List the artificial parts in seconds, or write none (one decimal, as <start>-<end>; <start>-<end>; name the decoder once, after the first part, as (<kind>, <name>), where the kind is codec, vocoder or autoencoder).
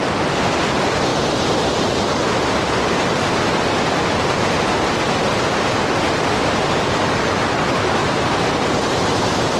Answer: 8.0-9.6 (vocoder, BigVGAN v2)